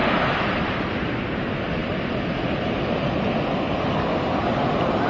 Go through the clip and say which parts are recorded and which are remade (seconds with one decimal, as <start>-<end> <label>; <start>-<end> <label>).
0.0-0.7 remade; 0.7-1.8 recorded; 1.8-3.8 remade; 3.8-5.1 recorded